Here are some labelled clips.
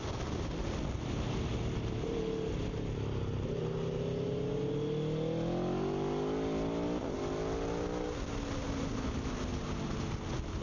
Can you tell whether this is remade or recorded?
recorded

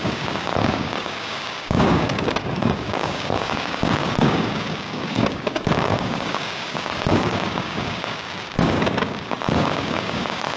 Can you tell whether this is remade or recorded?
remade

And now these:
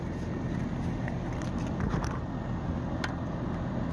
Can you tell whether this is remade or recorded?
recorded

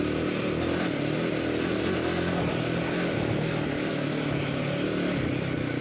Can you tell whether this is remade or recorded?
recorded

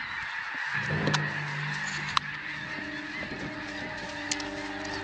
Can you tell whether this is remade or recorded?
recorded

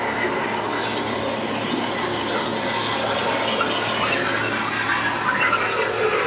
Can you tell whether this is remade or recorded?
recorded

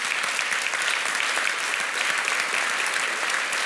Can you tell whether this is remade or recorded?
recorded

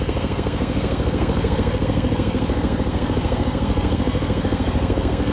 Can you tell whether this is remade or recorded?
remade